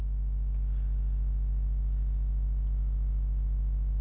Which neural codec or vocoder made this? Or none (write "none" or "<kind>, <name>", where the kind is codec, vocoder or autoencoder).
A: none